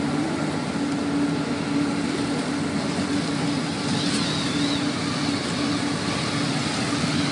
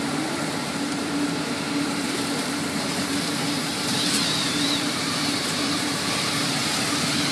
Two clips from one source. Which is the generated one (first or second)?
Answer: second